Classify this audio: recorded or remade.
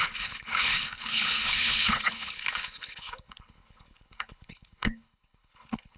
remade